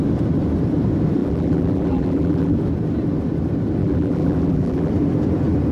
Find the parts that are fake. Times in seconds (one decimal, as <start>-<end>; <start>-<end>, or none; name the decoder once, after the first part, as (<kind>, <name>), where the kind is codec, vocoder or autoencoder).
1.2-2.5 (vocoder, BigVGAN v2); 3.8-4.9